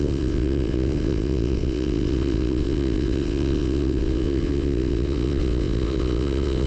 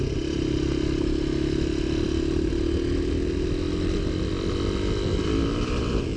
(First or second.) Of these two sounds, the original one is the second